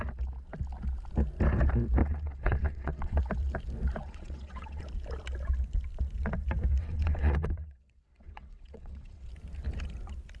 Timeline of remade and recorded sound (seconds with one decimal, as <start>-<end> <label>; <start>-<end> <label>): 0.0-2.0 recorded; 2.0-3.2 remade; 3.2-4.0 recorded; 4.0-4.8 remade; 4.8-6.8 recorded; 6.8-9.3 remade; 9.3-10.4 recorded